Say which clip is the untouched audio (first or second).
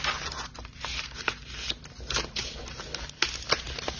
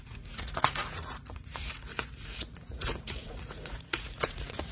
first